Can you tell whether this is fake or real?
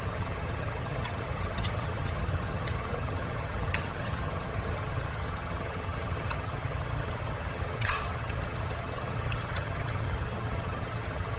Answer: fake